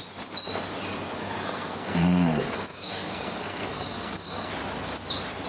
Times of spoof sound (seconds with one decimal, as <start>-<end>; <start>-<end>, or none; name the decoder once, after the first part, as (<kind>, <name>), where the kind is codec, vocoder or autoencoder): 1.2-4.5 (codec, SNAC)